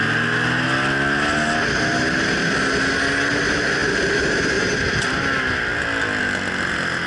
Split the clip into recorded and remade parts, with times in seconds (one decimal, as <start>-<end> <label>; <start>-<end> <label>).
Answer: 0.0-7.1 recorded

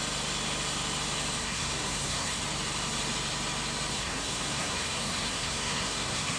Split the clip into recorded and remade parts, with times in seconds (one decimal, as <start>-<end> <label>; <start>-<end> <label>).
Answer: 0.0-1.4 recorded; 1.4-2.4 remade; 2.4-3.9 recorded; 3.9-6.4 remade

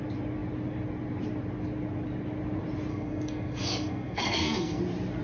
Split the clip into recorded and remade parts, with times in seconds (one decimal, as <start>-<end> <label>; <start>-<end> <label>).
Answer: 0.0-2.9 recorded; 2.9-4.8 remade; 4.8-5.2 recorded

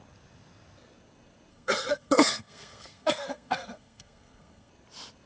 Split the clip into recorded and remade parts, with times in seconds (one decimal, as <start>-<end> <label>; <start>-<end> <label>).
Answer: 0.0-1.5 recorded; 1.5-4.7 remade; 4.7-5.3 recorded

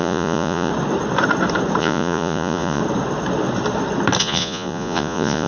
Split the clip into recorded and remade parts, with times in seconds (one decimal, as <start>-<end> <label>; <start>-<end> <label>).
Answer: 0.0-0.7 remade; 0.7-1.8 recorded; 1.8-2.8 remade; 2.8-4.2 recorded; 4.2-5.5 remade